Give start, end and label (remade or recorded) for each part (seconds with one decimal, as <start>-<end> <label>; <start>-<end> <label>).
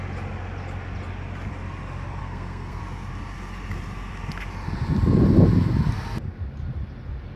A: 0.0-2.2 recorded; 2.2-2.8 remade; 2.8-7.4 recorded